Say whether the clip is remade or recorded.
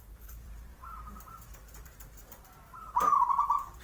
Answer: remade